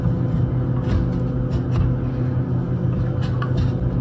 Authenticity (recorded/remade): recorded